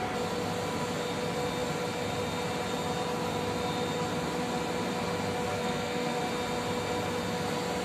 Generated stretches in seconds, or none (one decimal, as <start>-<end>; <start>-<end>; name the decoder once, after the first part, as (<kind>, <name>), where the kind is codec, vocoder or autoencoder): 5.5-6.2 (codec, SNAC)